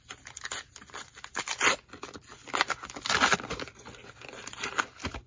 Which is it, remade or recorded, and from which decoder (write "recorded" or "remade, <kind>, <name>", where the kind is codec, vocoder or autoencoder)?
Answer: recorded